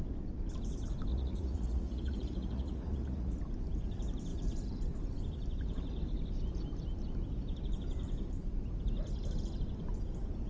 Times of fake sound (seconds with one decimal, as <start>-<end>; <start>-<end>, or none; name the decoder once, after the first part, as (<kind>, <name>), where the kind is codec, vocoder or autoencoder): 1.1-3.4 (vocoder, Vocos)